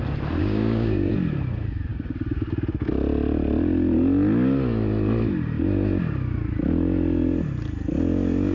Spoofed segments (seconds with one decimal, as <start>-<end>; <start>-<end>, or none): 0.4-1.1